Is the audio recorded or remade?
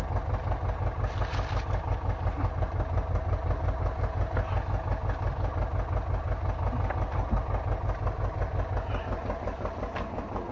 recorded